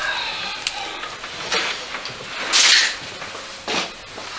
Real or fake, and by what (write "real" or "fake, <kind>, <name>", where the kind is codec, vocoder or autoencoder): real